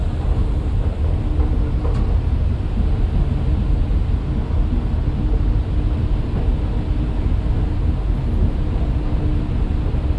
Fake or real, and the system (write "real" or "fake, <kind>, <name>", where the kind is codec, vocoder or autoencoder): real